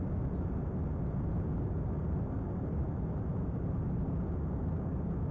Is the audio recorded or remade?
recorded